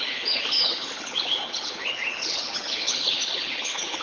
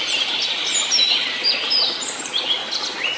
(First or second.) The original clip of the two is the second